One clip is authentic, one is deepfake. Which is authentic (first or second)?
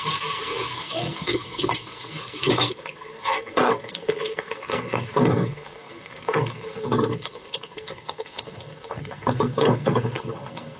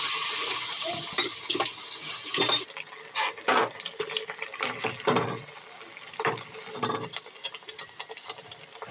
second